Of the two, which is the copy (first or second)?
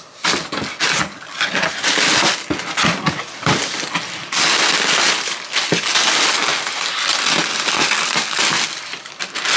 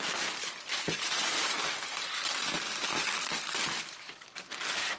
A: second